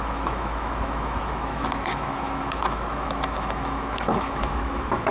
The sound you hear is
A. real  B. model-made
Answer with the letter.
B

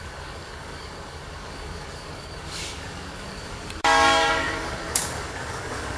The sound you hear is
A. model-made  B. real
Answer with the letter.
A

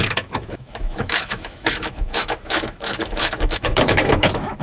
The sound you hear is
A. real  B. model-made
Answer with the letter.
B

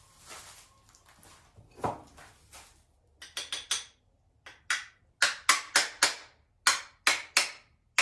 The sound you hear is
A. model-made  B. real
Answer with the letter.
B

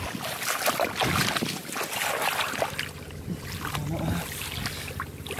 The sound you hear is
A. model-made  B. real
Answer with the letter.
B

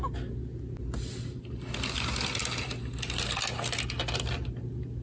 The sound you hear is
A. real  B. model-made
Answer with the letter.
A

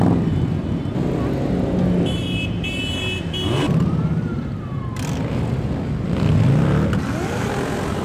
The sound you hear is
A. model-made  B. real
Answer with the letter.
B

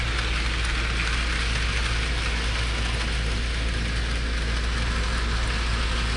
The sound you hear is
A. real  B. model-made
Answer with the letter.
A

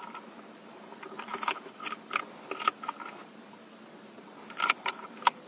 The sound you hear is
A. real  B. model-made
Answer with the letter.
A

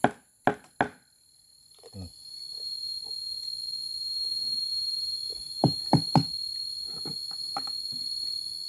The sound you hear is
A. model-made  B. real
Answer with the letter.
B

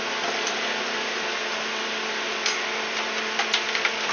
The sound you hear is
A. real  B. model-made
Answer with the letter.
A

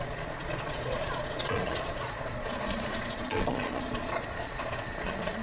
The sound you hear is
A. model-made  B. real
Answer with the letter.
A